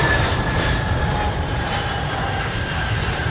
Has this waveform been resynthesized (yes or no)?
yes